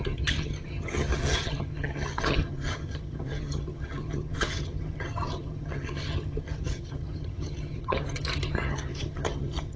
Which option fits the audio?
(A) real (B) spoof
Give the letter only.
B